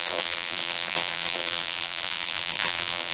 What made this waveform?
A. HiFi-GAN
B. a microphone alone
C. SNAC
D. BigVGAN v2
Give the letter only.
D